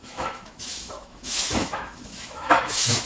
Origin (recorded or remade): remade